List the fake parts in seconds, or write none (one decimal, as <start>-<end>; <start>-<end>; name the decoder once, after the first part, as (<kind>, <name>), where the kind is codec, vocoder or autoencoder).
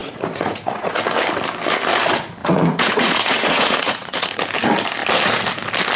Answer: 0.0-0.9 (vocoder, Vocos); 2.4-4.4